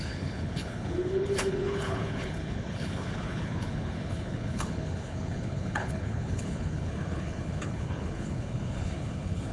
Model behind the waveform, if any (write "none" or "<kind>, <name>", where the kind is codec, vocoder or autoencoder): codec, HILCodec